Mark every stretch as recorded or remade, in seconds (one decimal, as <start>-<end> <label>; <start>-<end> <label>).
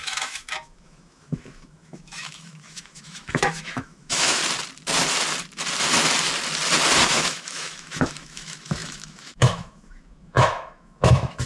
0.0-4.4 remade; 4.4-7.1 recorded; 7.1-11.5 remade